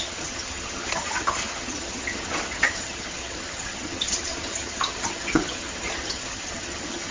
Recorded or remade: remade